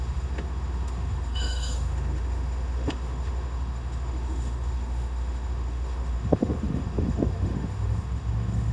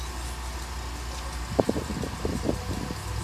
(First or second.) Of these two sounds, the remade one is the first